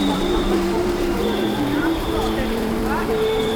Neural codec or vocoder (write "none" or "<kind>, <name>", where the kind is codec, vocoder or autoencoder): vocoder, BigVGAN v2